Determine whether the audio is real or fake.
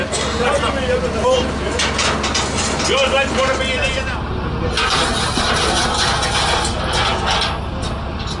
real